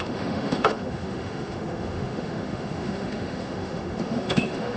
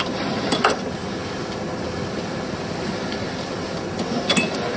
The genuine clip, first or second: second